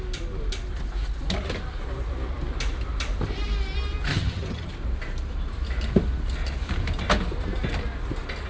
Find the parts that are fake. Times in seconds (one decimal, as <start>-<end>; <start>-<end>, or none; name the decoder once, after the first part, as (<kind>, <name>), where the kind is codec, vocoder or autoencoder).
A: 4.1-4.7 (vocoder, HiFi-GAN)